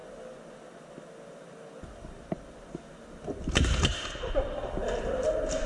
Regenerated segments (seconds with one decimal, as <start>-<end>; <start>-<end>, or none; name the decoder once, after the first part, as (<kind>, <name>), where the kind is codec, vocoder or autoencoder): none